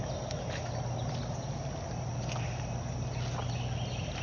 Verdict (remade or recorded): recorded